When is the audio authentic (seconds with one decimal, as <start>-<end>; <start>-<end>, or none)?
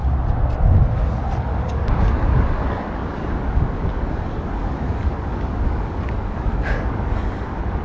0.0-1.4